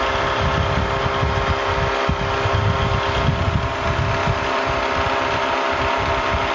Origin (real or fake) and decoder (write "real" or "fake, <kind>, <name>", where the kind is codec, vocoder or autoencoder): real